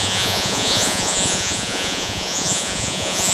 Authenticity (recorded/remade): remade